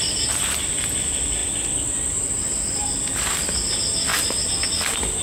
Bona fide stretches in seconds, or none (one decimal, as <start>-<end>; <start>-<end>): 0.0-4.1; 4.6-5.2